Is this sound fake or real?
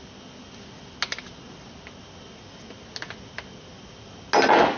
real